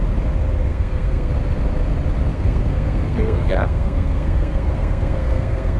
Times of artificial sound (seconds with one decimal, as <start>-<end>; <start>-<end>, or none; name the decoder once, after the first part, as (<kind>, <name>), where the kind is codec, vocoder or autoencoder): 0.7-1.3 (codec, SNAC); 2.3-5.8